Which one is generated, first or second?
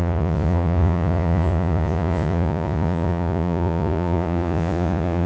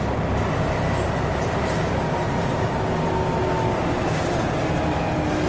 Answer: first